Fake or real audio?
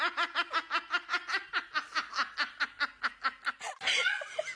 real